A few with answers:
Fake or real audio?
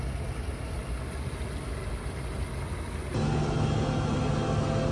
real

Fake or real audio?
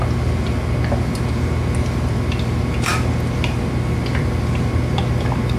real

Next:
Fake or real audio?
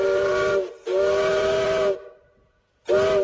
fake